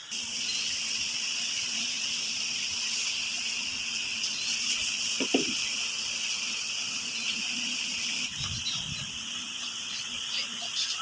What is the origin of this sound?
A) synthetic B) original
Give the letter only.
B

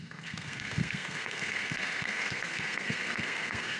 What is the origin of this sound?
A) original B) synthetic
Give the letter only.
B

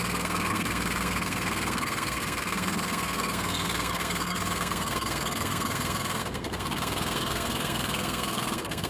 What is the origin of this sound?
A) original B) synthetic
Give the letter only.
B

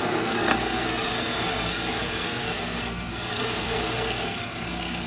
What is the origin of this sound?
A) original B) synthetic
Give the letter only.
B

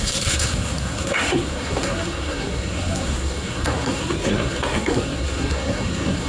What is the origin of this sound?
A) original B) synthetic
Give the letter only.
B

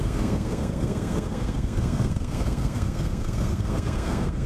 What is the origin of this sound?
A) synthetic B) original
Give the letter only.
A